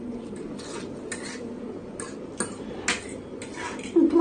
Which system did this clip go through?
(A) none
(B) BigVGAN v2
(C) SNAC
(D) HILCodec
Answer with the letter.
A